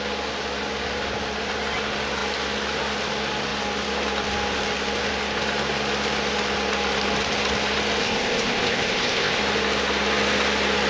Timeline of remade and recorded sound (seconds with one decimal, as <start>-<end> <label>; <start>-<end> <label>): 0.0-8.0 recorded; 8.0-9.4 remade; 9.4-10.9 recorded